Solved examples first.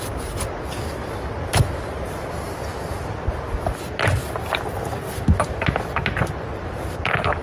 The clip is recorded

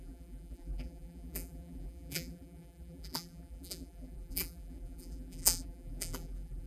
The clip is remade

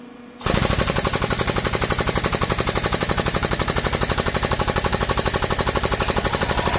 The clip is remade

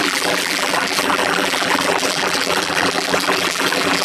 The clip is remade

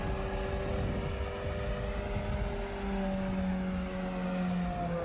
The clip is recorded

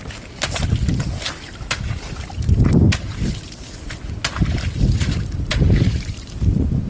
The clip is recorded